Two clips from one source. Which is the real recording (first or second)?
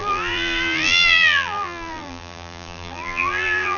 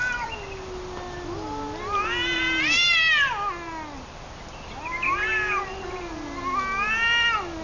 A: second